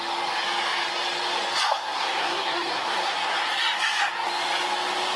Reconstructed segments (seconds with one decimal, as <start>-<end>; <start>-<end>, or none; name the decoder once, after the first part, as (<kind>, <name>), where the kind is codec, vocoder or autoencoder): 1.7-3.4 (codec, SNAC)